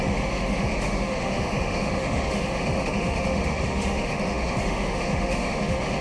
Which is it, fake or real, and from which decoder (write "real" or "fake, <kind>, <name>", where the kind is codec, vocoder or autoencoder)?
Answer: fake, autoencoder, DAC-VAE